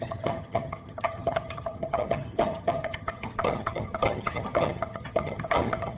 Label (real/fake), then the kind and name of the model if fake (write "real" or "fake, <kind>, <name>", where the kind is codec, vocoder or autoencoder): fake, vocoder, HiFi-GAN